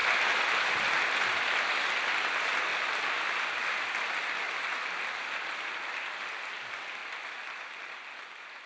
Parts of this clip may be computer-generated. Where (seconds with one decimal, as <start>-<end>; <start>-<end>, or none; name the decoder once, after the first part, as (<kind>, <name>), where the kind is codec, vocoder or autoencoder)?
0.0-0.5 (vocoder, BigVGAN v2); 2.7-5.6